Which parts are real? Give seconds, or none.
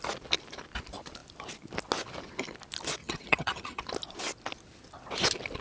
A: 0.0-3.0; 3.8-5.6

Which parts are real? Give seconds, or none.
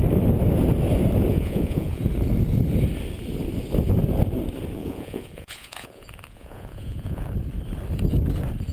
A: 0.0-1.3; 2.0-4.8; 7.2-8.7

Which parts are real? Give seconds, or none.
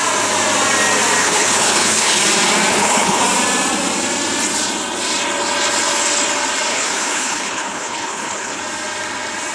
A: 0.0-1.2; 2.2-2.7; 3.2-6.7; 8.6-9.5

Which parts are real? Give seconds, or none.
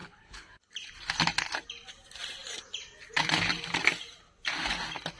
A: 0.7-5.2